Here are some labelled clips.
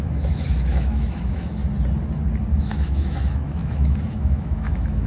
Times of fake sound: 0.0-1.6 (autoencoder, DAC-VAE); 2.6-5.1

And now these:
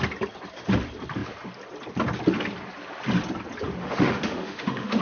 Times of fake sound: 3.8-5.0 (autoencoder, DAC-VAE)

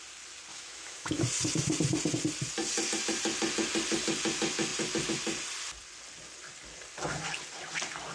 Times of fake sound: 0.5-1.2 (autoencoder, DAC-VAE)